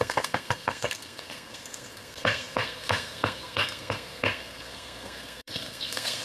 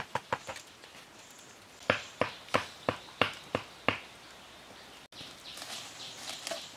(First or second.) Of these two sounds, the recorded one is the second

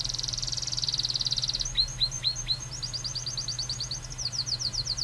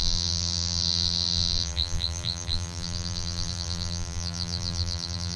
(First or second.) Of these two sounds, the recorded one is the first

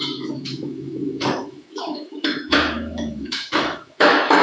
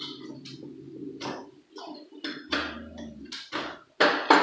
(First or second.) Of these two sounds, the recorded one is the second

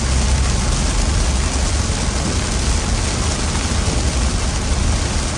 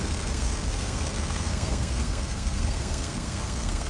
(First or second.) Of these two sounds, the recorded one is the first